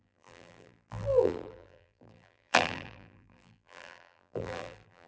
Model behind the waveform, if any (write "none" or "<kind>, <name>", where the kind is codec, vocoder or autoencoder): vocoder, BigVGAN v2